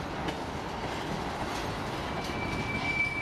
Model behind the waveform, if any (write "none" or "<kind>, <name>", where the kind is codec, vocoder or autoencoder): none